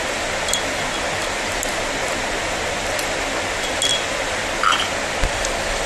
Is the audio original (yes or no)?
yes